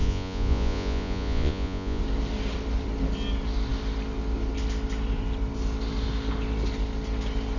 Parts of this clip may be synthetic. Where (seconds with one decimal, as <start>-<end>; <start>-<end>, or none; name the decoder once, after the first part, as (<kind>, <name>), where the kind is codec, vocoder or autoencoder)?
0.0-2.0 (vocoder, Vocos)